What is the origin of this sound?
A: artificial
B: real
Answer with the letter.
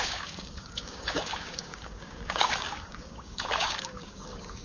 A